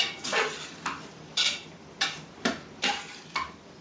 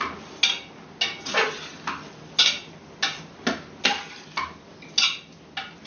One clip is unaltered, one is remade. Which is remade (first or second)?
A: first